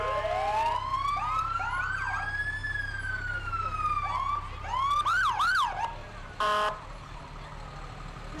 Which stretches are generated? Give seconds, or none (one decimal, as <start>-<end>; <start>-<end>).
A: 0.9-1.8; 2.6-3.5; 6.0-7.2